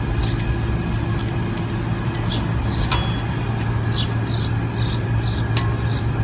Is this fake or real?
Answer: real